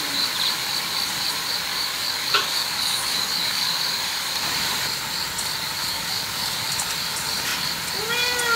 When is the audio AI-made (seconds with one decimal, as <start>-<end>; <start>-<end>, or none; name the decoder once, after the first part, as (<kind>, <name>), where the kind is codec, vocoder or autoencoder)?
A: 1.7-4.0 (codec, DAC); 5.8-6.7